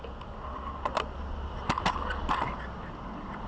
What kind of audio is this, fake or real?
real